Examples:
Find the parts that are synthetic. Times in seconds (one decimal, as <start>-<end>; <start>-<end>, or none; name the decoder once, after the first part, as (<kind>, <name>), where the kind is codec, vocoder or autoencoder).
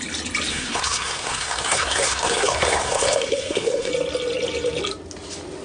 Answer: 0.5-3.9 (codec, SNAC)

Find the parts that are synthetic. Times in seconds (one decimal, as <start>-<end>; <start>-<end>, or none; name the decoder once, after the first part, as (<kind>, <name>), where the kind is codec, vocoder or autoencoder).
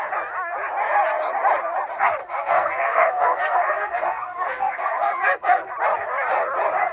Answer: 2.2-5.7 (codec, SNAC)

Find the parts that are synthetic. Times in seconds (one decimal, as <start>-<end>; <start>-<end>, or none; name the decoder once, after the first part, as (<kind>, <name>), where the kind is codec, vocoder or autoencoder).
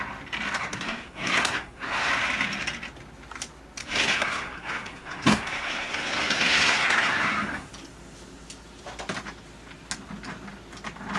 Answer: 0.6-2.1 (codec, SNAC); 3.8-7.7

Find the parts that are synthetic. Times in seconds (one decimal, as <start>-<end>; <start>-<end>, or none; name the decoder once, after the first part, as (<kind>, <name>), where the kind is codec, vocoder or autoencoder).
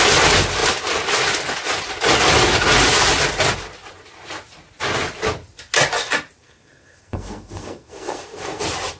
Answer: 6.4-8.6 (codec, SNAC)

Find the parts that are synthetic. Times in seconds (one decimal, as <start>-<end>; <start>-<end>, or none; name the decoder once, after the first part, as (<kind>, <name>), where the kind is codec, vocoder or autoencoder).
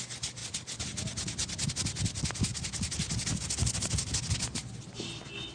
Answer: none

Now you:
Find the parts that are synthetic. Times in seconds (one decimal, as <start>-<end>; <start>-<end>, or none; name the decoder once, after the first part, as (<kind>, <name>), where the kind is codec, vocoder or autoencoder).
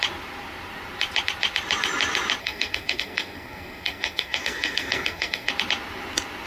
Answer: 2.4-5.5 (codec, SNAC)